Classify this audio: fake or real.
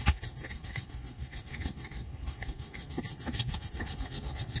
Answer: fake